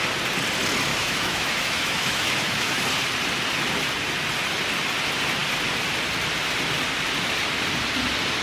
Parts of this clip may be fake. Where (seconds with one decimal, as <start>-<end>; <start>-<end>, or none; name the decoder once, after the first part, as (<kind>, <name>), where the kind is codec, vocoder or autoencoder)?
0.9-2.8 (autoencoder, DAC-VAE)